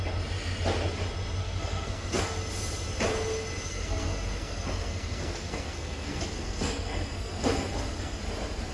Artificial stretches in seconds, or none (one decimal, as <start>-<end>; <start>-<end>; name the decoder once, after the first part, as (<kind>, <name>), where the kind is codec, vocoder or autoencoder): 1.4-2.2 (codec, SNAC); 3.6-8.2